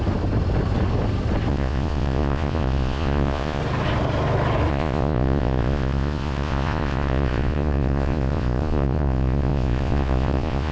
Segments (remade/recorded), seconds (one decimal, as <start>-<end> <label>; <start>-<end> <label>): 0.0-1.5 recorded; 1.5-3.6 remade; 3.6-4.7 recorded; 4.7-10.7 remade